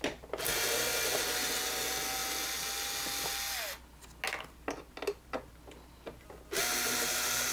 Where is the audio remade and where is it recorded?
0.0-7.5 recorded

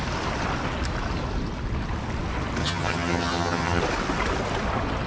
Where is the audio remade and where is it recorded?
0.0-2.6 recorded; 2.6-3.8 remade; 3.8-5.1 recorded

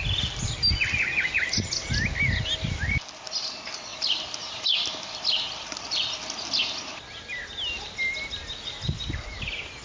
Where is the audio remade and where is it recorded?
0.0-9.8 recorded